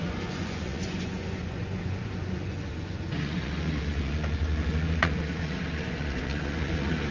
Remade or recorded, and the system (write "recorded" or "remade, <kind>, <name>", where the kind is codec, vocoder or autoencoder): remade, vocoder, Vocos